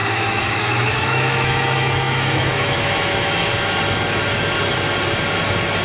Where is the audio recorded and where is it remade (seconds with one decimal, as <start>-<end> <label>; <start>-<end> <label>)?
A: 0.0-3.5 remade; 3.5-5.8 recorded